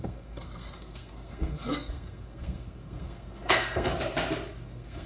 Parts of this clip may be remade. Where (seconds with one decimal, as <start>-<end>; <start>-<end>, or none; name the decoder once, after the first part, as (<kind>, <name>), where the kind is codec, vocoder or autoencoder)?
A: 0.0-3.9 (codec, SNAC); 4.5-5.1